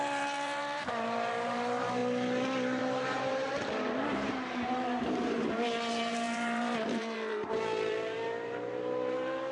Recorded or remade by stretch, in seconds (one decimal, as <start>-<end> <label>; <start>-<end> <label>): 0.0-2.0 remade; 2.0-2.8 recorded; 2.8-9.5 remade